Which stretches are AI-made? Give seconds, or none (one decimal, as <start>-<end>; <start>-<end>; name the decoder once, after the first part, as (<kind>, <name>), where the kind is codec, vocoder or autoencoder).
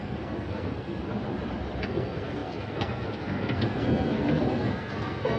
0.0-1.1 (codec, SNAC); 1.8-5.4